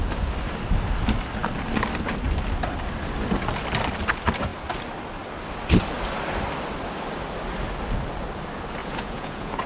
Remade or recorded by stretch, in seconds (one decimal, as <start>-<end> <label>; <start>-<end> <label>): 0.0-8.8 recorded; 8.8-9.7 remade